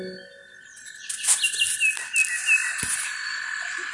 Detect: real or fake real